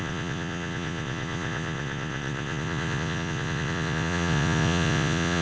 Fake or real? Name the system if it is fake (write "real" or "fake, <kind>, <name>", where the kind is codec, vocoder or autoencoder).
fake, vocoder, Vocos